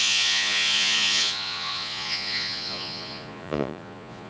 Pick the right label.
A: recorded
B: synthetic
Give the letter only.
B